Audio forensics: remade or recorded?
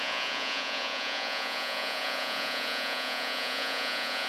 remade